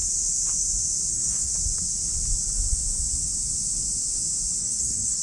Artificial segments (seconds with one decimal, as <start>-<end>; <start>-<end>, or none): 1.1-1.5; 4.6-5.2